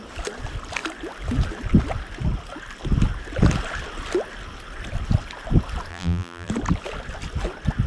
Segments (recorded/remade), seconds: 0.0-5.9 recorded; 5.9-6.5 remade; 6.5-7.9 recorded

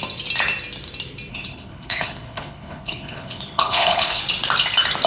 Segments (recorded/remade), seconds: 0.0-1.3 recorded; 1.3-4.2 remade; 4.2-5.1 recorded